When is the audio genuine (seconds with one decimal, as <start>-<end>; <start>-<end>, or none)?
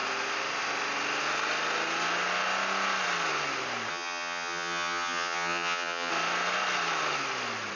0.0-3.9; 6.1-7.8